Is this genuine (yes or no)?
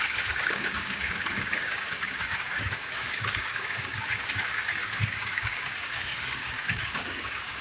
no